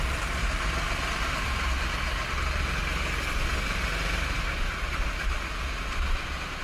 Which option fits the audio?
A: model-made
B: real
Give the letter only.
B